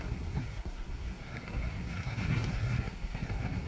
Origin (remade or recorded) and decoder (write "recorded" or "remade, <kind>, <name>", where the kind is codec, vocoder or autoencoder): remade, codec, SNAC